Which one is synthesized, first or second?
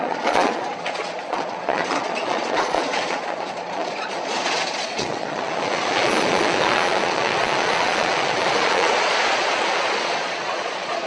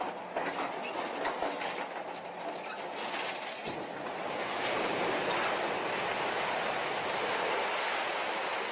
first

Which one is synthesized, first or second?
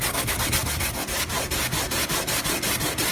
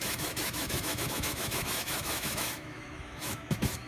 second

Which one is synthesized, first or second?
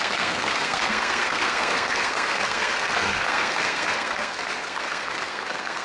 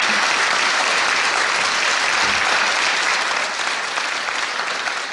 first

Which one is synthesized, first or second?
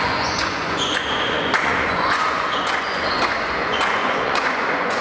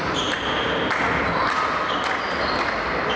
first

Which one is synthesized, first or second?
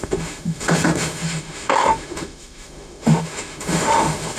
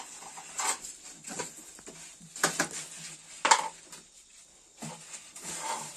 first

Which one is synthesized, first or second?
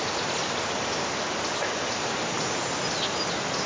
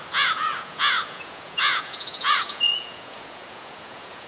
second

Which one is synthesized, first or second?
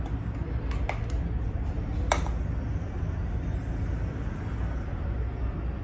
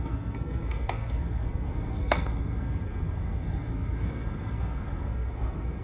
second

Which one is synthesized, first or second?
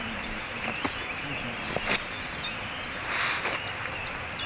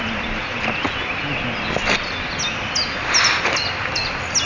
first